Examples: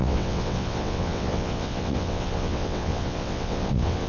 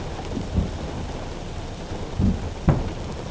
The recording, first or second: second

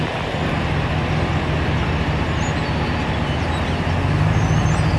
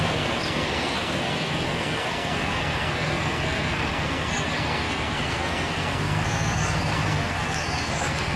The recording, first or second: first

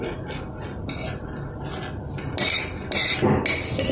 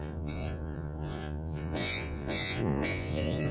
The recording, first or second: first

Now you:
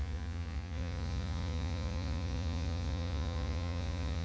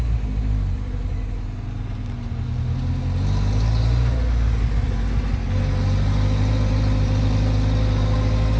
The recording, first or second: second